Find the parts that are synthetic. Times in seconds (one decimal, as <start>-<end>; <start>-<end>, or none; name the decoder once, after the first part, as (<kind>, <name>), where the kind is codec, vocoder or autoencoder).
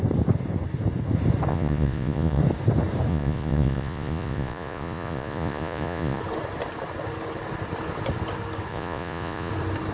1.5-2.4 (vocoder, Vocos); 3.1-6.2; 8.7-9.5